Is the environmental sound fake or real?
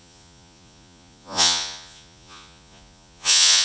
fake